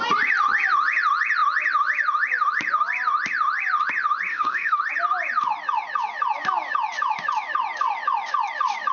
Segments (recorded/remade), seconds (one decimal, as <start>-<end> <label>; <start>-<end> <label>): 0.0-4.3 recorded; 4.3-4.8 remade; 4.8-8.9 recorded